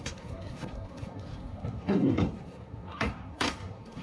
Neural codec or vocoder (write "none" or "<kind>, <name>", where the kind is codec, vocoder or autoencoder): codec, SNAC